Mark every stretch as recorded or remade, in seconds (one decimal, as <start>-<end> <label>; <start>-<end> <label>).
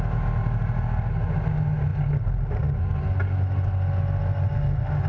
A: 0.0-5.1 recorded